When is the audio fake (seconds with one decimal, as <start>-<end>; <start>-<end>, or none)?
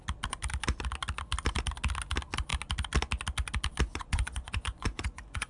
3.9-5.5